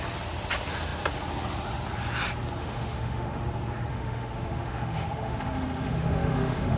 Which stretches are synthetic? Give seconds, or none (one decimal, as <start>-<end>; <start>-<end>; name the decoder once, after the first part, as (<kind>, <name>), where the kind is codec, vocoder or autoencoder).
2.6-3.4 (autoencoder, DAC-VAE); 3.9-6.8